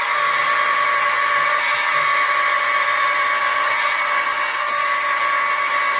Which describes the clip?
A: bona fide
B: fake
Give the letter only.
A